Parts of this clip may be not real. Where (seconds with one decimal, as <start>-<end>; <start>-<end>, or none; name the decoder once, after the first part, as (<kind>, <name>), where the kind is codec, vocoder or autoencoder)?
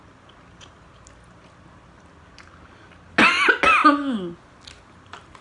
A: none